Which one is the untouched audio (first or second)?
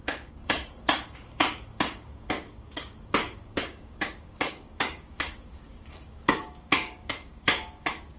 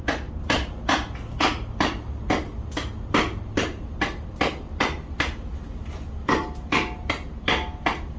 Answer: second